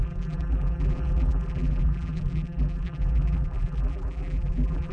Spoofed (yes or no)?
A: yes